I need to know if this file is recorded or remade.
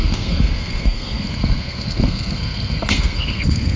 remade